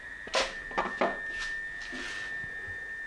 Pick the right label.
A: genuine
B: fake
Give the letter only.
A